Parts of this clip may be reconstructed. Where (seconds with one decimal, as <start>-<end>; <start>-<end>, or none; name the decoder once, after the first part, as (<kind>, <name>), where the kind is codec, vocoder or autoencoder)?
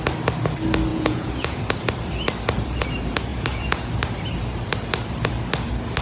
0.9-1.6 (vocoder, Vocos); 3.3-3.9